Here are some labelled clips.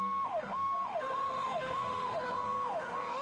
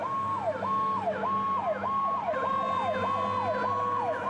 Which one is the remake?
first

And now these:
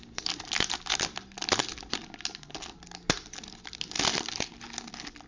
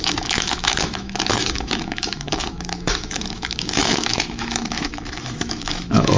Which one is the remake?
second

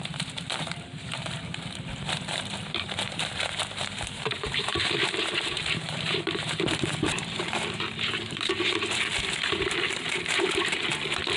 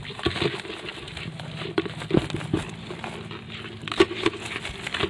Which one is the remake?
first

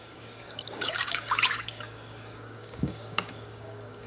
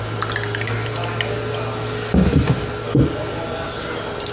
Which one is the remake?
first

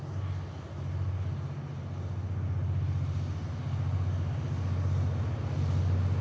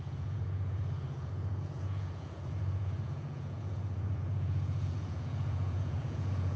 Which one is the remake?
second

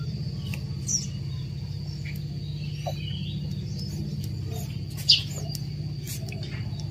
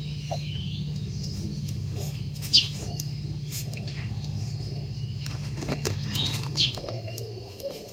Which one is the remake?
second